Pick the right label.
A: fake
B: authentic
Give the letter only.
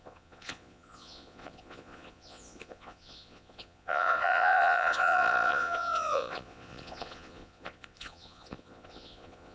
A